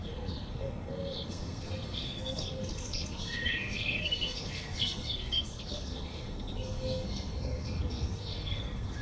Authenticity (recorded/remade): remade